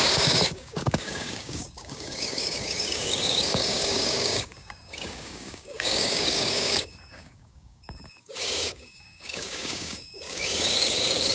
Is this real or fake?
fake